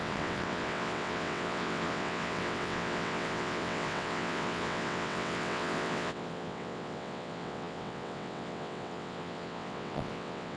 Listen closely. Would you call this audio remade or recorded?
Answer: remade